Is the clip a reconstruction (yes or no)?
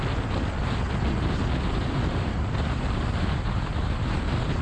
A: no